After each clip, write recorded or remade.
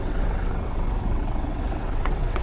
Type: remade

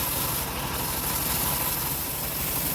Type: recorded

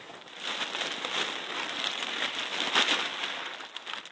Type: recorded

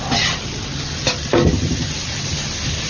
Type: recorded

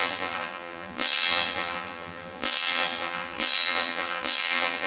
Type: remade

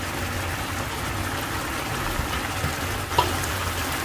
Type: recorded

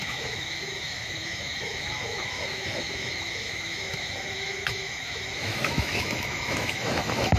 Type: remade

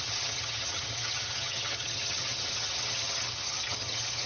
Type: remade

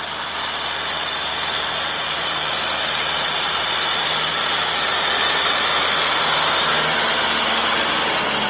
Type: recorded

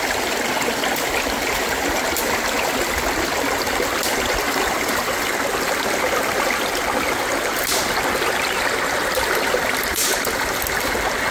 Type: recorded